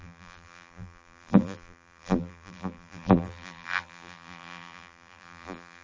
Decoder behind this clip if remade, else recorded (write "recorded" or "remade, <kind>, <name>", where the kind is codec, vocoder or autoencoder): remade, vocoder, BigVGAN v2